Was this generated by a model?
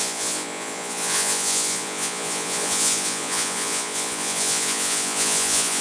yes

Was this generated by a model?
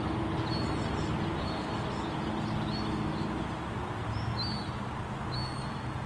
no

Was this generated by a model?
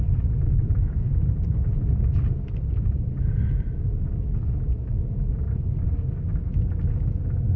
no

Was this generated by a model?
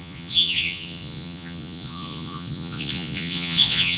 yes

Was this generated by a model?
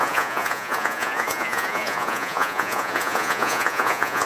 yes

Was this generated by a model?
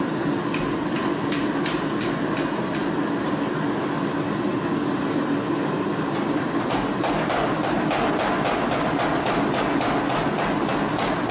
no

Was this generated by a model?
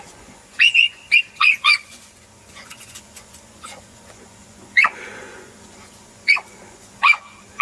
yes